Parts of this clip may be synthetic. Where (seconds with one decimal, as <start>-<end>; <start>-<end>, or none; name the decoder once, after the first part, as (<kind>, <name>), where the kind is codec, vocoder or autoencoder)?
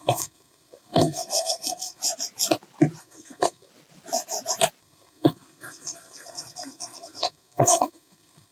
0.0-2.0 (codec, SNAC); 3.0-3.7; 4.8-8.5